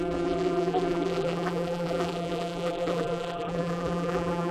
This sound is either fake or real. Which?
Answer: fake